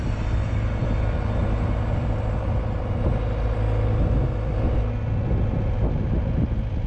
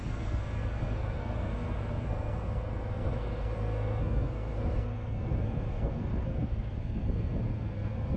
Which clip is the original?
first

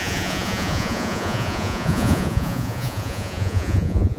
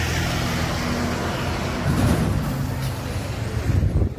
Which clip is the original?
second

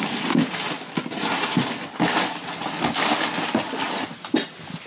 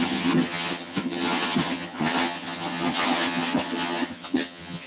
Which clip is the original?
first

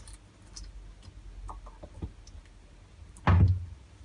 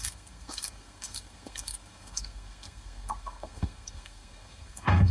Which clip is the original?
first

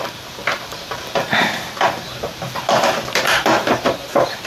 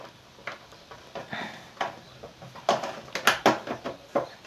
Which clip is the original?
second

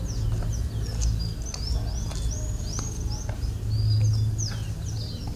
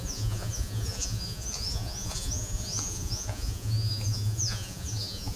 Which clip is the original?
first